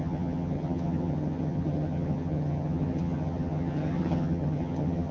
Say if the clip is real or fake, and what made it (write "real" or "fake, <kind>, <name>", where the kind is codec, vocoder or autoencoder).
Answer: fake, vocoder, HiFi-GAN